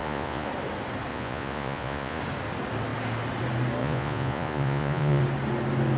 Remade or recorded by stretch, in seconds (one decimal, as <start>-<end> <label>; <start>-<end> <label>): 0.0-0.5 remade; 0.5-1.1 recorded; 1.1-2.2 remade; 2.2-3.8 recorded; 3.8-5.2 remade; 5.2-6.0 recorded

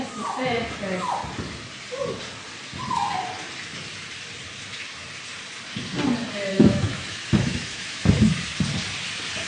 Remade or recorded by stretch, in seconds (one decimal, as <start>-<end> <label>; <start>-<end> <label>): 0.0-6.5 recorded; 6.5-8.1 remade; 8.1-9.5 recorded